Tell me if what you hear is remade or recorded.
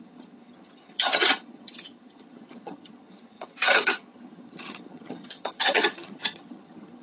remade